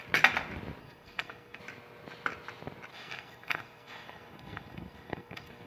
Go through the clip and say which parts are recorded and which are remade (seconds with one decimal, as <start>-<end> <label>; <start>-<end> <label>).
0.0-0.8 recorded; 0.8-1.6 remade; 1.6-2.9 recorded; 2.9-5.7 remade